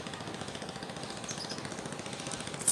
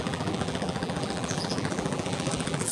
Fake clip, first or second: second